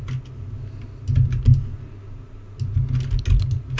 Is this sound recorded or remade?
recorded